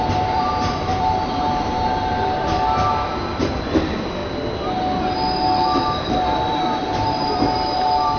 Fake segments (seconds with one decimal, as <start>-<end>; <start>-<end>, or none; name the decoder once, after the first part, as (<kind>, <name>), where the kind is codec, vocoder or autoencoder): 0.0-4.2 (vocoder, BigVGAN v2); 5.8-8.2

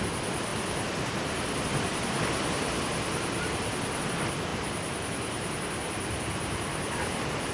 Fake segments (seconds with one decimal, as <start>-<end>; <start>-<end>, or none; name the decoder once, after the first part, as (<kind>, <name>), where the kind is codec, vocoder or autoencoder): 0.5-4.0 (vocoder, BigVGAN v2); 4.5-7.5

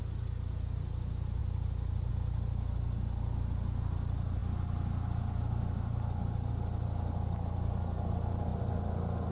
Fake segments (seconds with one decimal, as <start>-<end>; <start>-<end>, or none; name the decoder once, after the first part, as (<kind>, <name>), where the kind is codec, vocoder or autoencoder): 1.4-2.1 (vocoder, BigVGAN v2); 8.5-9.3

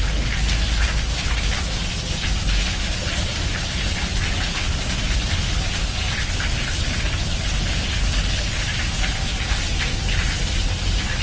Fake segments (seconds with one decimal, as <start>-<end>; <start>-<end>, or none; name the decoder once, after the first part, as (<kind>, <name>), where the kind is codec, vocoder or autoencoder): 8.7-10.2 (vocoder, BigVGAN v2)

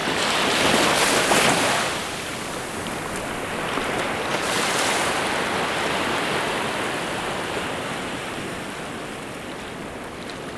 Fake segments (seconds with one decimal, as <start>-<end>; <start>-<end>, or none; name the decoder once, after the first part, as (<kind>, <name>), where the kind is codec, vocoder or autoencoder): 4.3-5.2 (vocoder, BigVGAN v2)

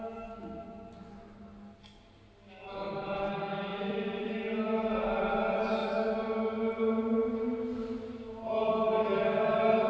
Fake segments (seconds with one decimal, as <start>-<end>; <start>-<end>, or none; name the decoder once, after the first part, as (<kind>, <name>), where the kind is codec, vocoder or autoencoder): 3.7-4.3 (vocoder, BigVGAN v2)

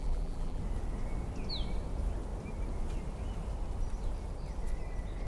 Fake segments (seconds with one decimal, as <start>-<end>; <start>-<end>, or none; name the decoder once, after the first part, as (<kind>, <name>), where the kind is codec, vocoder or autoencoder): 0.0-0.6 (vocoder, BigVGAN v2)

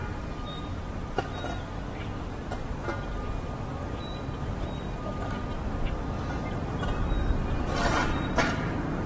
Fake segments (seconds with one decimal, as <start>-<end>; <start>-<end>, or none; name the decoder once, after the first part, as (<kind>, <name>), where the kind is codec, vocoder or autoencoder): 0.0-1.2 (vocoder, BigVGAN v2); 8.0-9.1